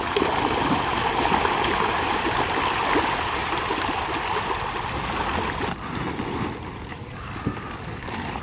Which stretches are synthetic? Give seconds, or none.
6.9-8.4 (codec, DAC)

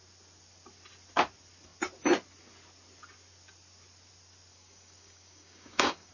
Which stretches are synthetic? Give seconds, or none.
4.5-6.1 (codec, DAC)

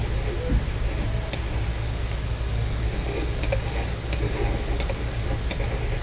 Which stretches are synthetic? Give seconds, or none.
1.7-5.3 (codec, DAC)

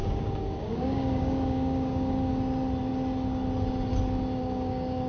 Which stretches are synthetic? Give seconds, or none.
0.0-2.3 (codec, DAC); 4.4-5.1

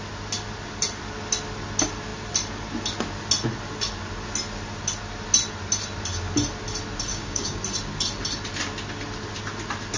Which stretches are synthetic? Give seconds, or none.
7.1-7.6 (codec, DAC)

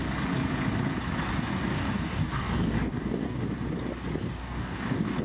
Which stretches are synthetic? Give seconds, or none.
1.5-3.4 (codec, DAC); 4.4-5.2

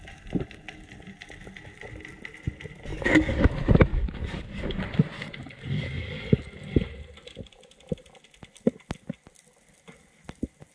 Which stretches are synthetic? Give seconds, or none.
2.9-3.5 (codec, DAC); 3.9-4.8; 5.4-6.5

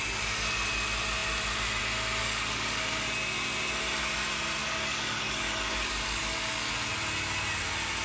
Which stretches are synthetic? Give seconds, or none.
2.2-3.0 (codec, DAC); 4.6-6.7